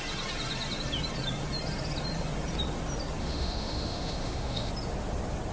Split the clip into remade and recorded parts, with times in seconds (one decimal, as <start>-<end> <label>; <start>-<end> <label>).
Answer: 0.0-3.2 recorded; 3.2-4.7 remade; 4.7-5.5 recorded